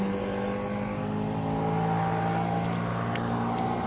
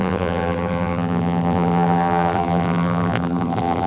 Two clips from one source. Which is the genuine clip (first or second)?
first